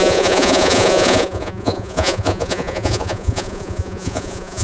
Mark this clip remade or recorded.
remade